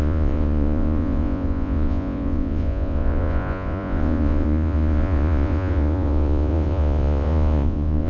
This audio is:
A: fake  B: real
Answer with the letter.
A